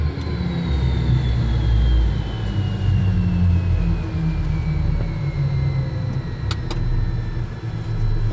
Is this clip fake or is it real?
real